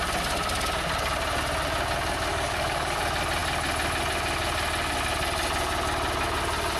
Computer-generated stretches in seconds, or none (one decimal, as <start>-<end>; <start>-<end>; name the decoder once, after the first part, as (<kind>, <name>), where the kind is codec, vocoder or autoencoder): 2.3-3.0 (codec, DAC)